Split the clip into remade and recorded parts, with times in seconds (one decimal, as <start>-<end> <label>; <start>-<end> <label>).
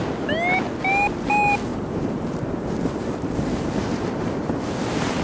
0.0-1.7 recorded; 1.7-4.8 remade; 4.8-5.2 recorded